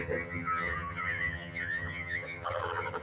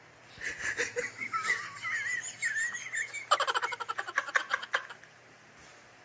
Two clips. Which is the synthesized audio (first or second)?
first